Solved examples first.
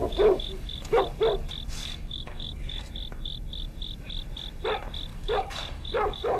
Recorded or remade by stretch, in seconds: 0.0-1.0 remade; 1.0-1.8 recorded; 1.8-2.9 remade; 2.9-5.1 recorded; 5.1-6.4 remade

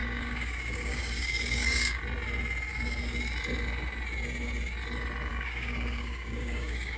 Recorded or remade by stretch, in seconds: 0.0-2.0 remade; 2.0-5.3 recorded; 5.3-7.0 remade

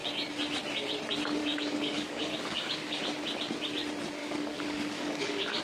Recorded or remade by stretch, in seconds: 0.0-1.4 recorded; 1.4-3.0 remade; 3.0-4.2 recorded; 4.2-5.6 remade

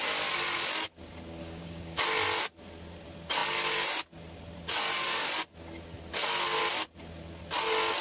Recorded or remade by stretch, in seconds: 0.0-1.4 recorded; 1.4-2.0 remade; 2.0-8.0 recorded

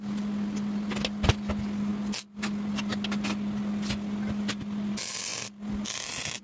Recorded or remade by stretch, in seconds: 0.0-6.4 recorded

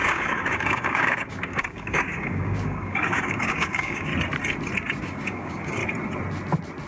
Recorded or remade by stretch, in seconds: 0.0-4.1 remade; 4.1-5.0 recorded; 5.0-5.8 remade; 5.8-6.9 recorded